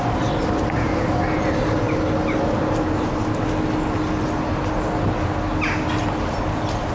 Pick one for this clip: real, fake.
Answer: real